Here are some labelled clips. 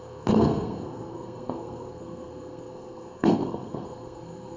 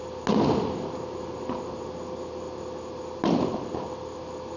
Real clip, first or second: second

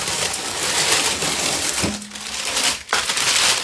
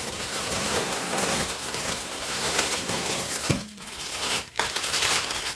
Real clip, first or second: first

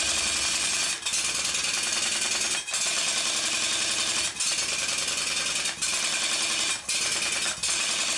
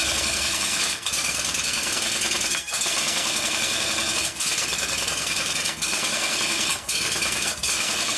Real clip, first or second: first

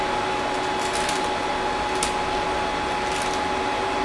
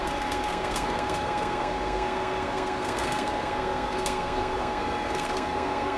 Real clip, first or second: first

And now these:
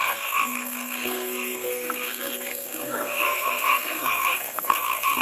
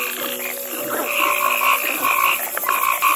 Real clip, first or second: second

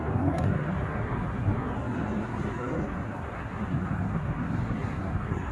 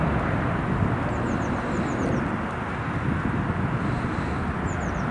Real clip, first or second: second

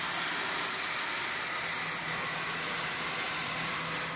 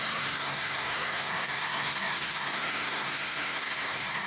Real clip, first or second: first